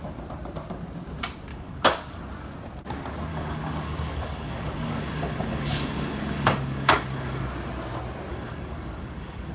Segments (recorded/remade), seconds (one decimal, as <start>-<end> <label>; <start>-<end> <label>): 0.0-1.5 recorded; 1.5-2.2 remade; 2.2-3.3 recorded; 3.3-7.4 remade; 7.4-8.3 recorded; 8.3-9.5 remade

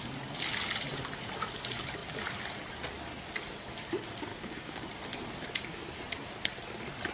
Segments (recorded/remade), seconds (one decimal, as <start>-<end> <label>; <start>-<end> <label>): 0.0-4.3 recorded; 4.3-4.9 remade; 4.9-7.1 recorded

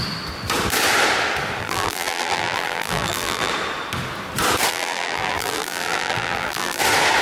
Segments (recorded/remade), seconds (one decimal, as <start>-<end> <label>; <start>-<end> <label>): 0.0-1.6 recorded; 1.6-3.5 remade; 3.5-4.7 recorded; 4.7-6.8 remade; 6.8-7.2 recorded

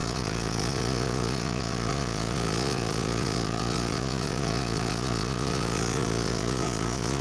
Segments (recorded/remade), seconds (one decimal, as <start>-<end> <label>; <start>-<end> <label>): 0.0-7.2 remade

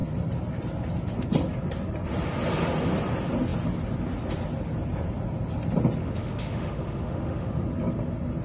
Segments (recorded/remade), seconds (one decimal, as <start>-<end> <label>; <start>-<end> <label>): 0.0-6.0 recorded; 6.0-7.5 remade; 7.5-8.4 recorded

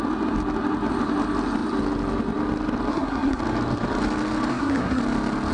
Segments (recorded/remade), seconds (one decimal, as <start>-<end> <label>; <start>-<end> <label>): 0.0-2.9 recorded; 2.9-3.4 remade; 3.4-4.5 recorded; 4.5-5.0 remade; 5.0-5.5 recorded

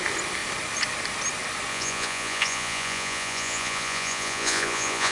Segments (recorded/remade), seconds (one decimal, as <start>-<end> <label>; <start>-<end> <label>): 0.0-1.7 recorded; 1.7-5.1 remade

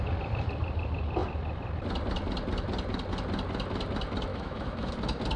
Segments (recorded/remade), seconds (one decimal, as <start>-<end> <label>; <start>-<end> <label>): 0.0-4.3 recorded; 4.3-4.9 remade; 4.9-5.4 recorded